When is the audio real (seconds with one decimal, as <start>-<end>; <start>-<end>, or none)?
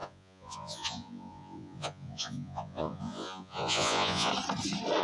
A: 4.3-5.0